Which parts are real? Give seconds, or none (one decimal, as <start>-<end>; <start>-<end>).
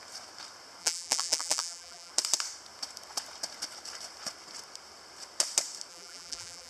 0.0-0.8; 2.1-5.9